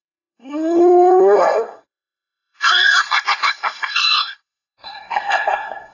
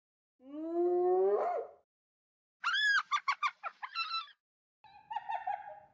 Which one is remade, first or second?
first